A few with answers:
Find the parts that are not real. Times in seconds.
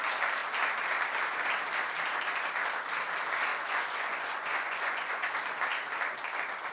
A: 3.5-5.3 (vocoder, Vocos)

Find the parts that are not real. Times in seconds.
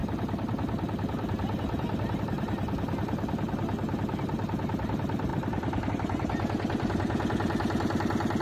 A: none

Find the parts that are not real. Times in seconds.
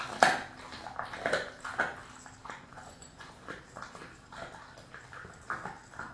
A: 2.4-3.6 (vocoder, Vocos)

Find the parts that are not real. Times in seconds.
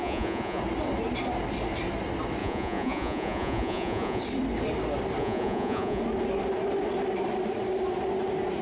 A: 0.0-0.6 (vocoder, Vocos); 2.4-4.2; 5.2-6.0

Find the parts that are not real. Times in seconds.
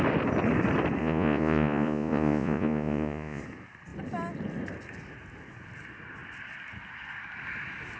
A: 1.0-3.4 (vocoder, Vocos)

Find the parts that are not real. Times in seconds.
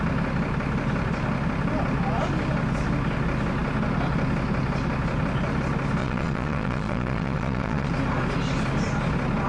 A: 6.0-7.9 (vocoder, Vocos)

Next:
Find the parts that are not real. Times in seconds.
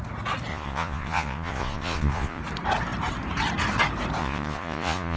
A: 0.5-2.4 (vocoder, Vocos); 4.2-5.2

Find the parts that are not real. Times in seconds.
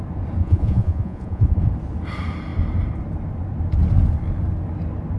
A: 0.4-1.7 (vocoder, Vocos)